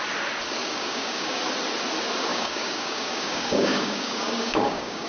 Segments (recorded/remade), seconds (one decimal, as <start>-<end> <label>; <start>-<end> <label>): 0.0-0.6 recorded; 0.6-1.4 remade; 1.4-2.3 recorded; 2.3-5.1 remade